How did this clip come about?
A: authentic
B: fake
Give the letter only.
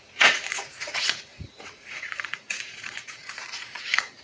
B